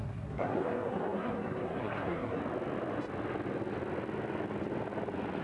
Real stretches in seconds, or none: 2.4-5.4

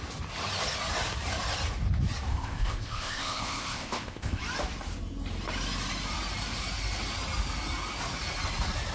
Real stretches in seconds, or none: 0.0-2.3; 4.4-8.9

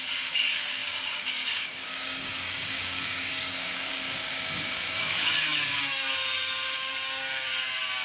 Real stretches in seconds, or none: none

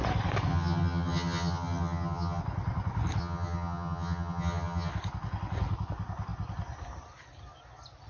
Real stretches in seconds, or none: 0.0-0.5; 2.4-3.2; 4.9-8.1

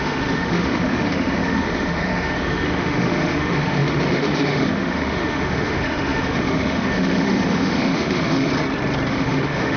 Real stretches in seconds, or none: 8.5-9.1

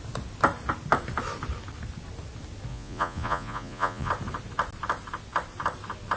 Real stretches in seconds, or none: 0.0-2.7; 4.1-6.2

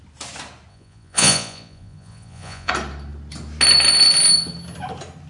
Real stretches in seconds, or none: 0.0-0.7; 2.7-5.3